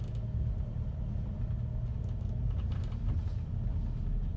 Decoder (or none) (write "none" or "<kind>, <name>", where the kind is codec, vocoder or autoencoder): none